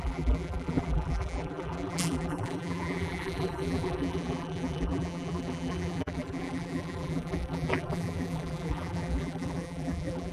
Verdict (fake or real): fake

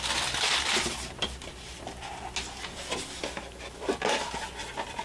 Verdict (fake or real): real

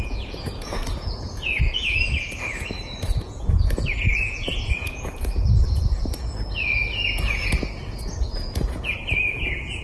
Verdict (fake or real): fake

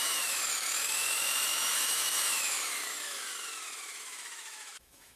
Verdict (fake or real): fake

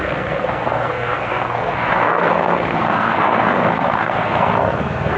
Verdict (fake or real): fake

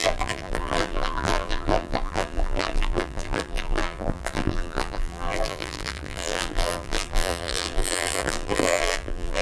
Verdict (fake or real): fake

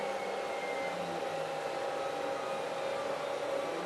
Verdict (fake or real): real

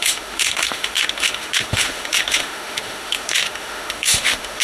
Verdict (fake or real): fake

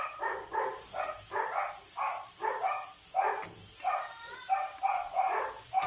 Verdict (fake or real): real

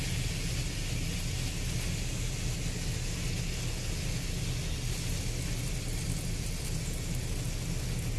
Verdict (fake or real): real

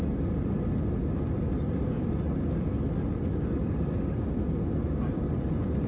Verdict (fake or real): real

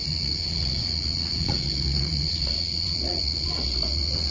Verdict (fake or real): fake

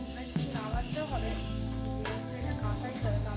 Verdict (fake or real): fake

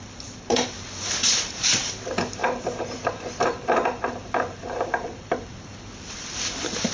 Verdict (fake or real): fake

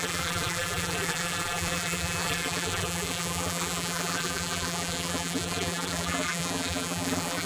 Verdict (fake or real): fake